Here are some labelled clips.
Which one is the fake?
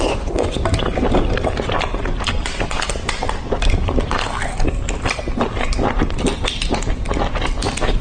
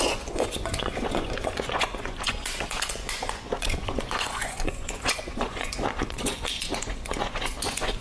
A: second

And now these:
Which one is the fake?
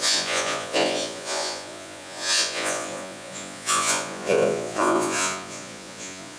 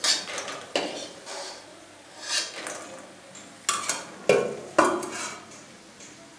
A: first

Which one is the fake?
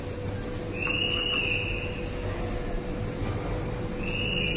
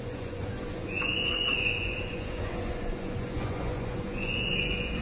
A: second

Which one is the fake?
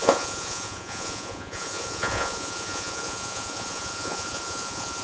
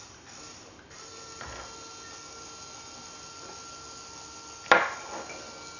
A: first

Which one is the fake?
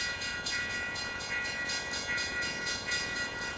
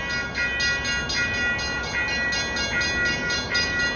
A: first